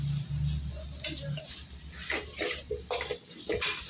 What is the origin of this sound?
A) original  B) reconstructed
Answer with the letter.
A